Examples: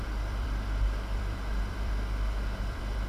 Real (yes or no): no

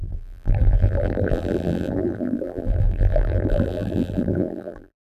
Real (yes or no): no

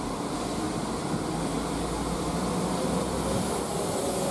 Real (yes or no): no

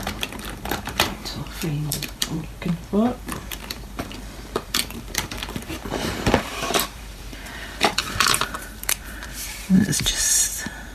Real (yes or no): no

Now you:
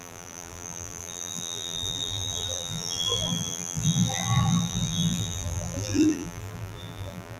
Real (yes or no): no